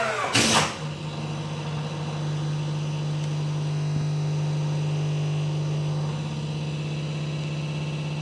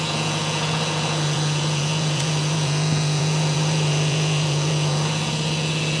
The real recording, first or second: first